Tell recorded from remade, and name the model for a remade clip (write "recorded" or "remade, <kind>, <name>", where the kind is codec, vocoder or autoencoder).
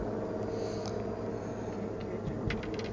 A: recorded